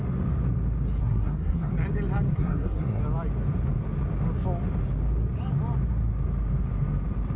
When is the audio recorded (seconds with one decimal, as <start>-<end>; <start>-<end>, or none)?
0.0-1.0; 1.7-2.3; 3.0-7.4